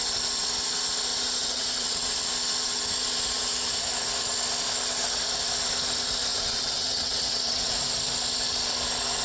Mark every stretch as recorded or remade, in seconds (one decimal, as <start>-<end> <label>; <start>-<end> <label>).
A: 0.0-1.4 recorded; 1.4-2.3 remade; 2.3-6.3 recorded; 6.3-7.7 remade; 7.7-9.2 recorded